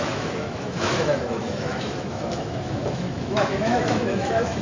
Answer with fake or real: fake